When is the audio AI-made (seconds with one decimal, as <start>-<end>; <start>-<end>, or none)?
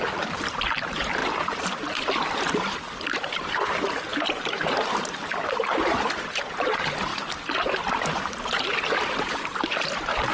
0.0-1.2; 2.3-4.1; 5.5-7.1; 8.0-10.3